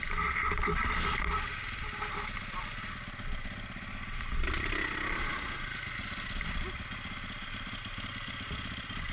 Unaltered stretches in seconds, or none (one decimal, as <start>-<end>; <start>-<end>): 0.0-9.1